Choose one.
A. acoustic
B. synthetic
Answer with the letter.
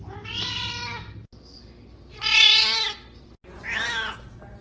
A